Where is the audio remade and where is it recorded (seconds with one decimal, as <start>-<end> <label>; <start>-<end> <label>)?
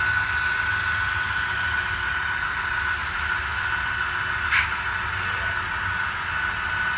0.0-7.0 recorded